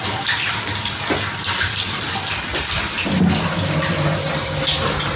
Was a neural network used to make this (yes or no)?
no